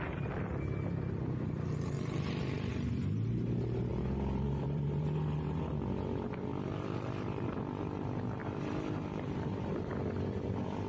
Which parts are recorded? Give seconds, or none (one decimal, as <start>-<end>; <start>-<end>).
0.0-3.9; 5.7-6.5; 7.6-8.4; 9.9-10.9